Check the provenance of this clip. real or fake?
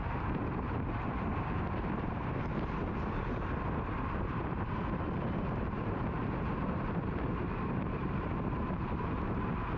fake